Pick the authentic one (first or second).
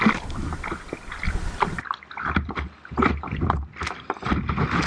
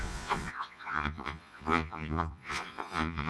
first